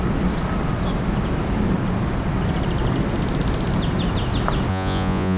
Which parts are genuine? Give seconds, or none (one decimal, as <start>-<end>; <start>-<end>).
0.0-4.7